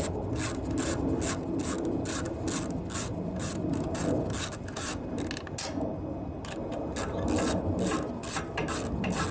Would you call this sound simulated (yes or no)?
no